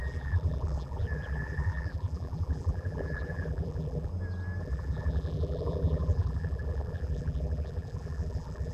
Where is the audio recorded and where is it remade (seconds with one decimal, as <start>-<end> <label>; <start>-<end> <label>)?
0.0-4.1 remade; 4.1-4.6 recorded; 4.6-8.7 remade